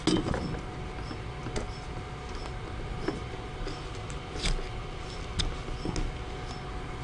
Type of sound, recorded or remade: recorded